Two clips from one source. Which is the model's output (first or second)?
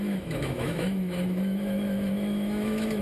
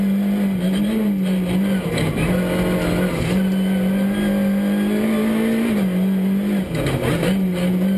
first